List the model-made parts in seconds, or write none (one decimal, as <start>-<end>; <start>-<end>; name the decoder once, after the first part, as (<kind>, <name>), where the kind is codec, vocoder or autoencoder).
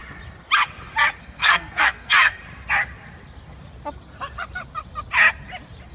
1.2-2.4 (codec, SNAC)